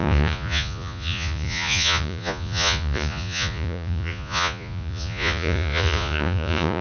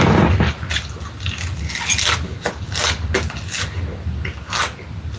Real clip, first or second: second